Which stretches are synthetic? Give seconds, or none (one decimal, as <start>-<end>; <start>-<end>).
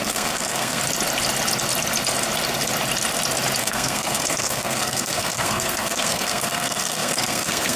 0.0-0.8; 3.6-7.8